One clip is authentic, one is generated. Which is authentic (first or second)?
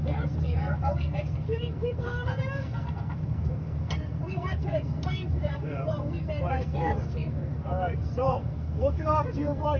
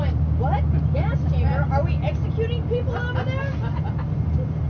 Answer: second